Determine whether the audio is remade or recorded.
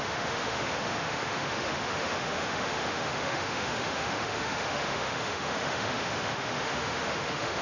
remade